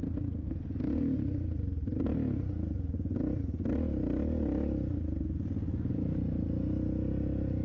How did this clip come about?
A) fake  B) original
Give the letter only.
B